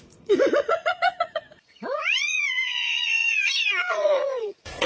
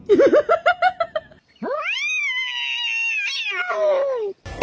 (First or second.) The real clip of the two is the second